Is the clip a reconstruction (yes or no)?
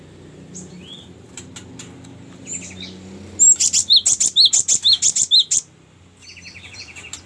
no